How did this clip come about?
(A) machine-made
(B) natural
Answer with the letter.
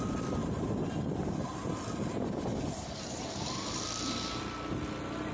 B